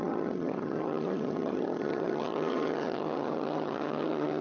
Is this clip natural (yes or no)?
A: no